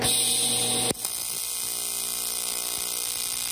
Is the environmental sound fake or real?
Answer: real